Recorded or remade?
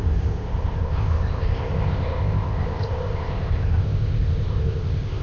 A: remade